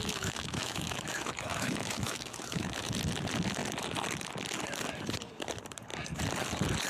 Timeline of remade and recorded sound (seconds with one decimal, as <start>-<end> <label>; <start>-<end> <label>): 0.0-2.9 remade; 2.9-6.9 recorded